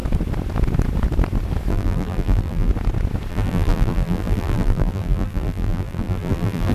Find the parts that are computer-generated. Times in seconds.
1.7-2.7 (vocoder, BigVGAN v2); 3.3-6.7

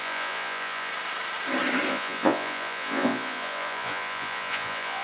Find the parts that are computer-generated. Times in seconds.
0.0-0.9 (vocoder, Vocos); 1.9-5.0